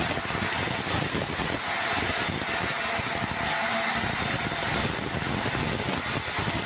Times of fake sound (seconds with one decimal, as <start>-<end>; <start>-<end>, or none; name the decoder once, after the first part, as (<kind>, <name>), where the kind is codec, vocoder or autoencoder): none